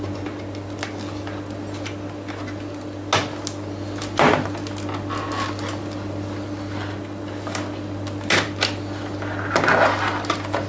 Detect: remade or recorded recorded